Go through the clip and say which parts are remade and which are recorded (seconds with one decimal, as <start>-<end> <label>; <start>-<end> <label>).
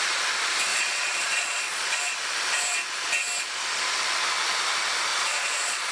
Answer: 0.0-0.7 recorded; 0.7-2.0 remade; 2.0-5.1 recorded; 5.1-5.9 remade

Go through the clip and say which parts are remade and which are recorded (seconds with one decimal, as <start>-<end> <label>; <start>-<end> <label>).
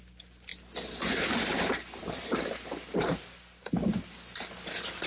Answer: 0.0-5.1 recorded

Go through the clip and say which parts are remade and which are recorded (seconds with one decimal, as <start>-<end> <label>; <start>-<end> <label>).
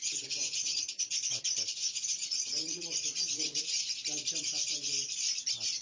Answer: 0.0-1.3 remade; 1.3-1.8 recorded; 1.8-3.8 remade; 3.8-5.8 recorded